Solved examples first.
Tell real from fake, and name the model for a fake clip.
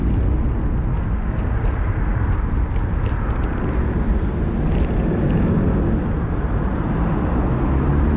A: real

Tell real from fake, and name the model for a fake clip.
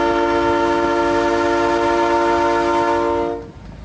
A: real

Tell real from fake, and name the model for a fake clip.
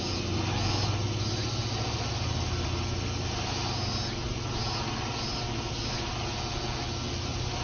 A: real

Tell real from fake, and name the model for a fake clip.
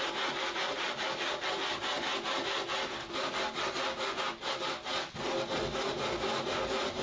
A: real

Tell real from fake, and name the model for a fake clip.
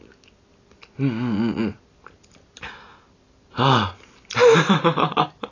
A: real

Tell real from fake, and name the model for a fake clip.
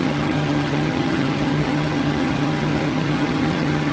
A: fake, vocoder, HiFi-GAN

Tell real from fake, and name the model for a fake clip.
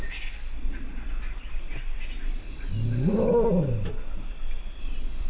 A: real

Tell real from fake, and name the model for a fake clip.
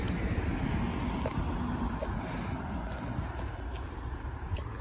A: real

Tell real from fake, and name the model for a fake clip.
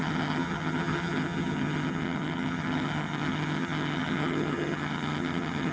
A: fake, vocoder, HiFi-GAN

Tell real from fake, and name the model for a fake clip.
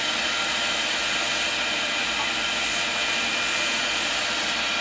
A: real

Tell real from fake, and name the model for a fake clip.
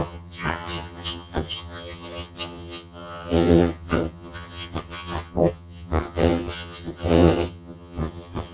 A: fake, vocoder, HiFi-GAN